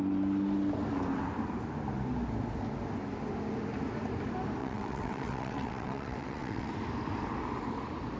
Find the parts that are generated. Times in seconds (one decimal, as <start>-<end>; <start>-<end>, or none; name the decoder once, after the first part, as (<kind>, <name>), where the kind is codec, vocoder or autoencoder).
4.6-6.7 (vocoder, WaveNeXt)